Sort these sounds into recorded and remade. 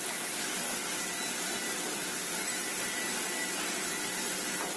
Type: recorded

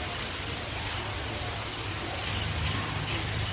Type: recorded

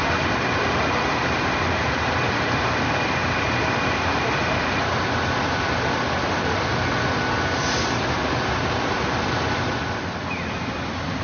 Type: recorded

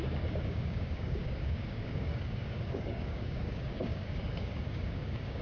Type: remade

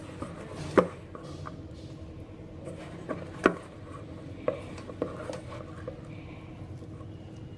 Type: recorded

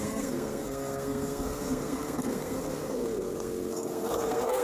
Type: remade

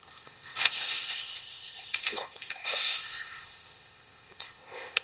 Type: remade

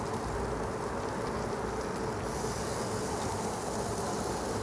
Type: recorded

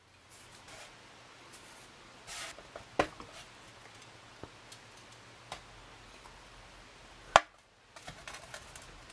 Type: recorded